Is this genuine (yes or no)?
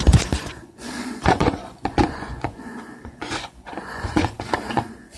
no